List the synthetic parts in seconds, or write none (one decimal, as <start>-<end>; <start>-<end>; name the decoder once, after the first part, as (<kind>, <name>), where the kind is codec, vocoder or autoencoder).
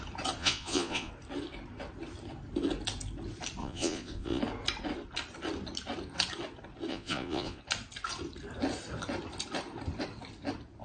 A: 0.4-1.1 (vocoder, Vocos); 3.6-4.4; 6.9-7.6